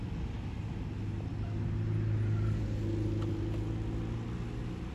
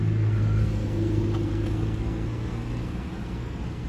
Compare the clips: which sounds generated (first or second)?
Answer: second